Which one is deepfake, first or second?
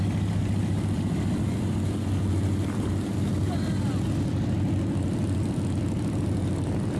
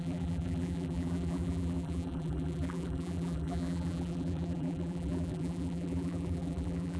second